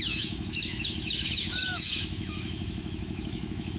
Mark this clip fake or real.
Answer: fake